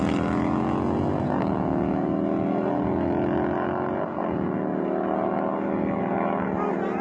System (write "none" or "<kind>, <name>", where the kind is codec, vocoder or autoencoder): none